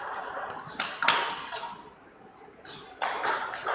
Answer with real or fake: real